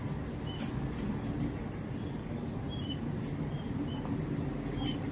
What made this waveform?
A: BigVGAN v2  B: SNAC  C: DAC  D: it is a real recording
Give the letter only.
D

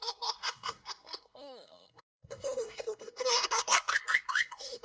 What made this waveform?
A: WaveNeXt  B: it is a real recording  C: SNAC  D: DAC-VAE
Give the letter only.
C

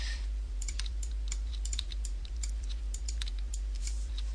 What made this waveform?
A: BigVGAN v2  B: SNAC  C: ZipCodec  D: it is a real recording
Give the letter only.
A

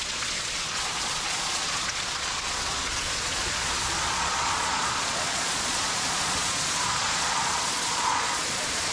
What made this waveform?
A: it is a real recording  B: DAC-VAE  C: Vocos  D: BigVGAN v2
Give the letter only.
C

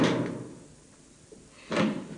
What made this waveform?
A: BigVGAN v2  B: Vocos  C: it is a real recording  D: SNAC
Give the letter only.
C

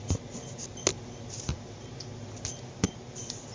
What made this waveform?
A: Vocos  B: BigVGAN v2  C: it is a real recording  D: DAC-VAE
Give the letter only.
C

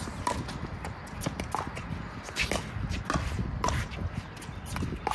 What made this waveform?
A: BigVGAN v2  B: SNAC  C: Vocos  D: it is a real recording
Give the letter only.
D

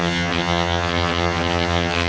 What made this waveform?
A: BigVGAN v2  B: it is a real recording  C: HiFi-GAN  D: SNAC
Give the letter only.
C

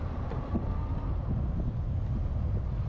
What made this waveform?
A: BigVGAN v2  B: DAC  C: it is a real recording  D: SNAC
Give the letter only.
C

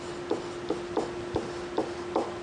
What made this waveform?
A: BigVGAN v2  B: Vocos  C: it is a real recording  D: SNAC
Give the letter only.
C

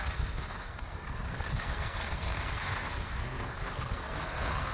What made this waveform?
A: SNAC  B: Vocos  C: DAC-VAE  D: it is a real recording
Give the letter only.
A